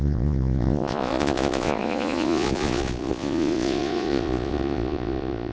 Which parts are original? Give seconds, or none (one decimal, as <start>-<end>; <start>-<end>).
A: none